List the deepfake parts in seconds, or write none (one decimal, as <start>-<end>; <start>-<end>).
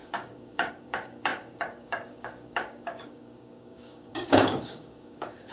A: 0.0-5.5